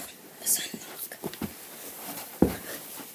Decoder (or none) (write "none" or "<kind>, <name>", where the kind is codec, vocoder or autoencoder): none